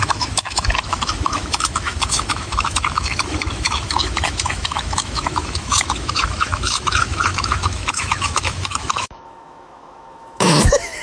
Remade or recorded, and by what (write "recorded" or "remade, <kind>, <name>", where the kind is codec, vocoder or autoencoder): remade, autoencoder, DAC-VAE